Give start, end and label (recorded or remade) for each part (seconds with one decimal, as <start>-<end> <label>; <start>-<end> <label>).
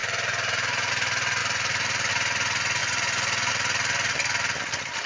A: 0.0-0.9 remade; 0.9-1.4 recorded; 1.4-2.1 remade; 2.1-2.8 recorded; 2.8-3.5 remade; 3.5-5.1 recorded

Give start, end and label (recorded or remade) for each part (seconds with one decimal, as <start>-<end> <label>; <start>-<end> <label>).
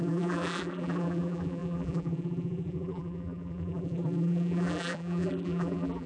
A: 0.0-6.1 remade